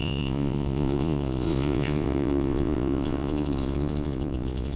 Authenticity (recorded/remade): remade